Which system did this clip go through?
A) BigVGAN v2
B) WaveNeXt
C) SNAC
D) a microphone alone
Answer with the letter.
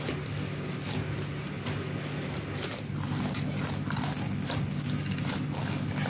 D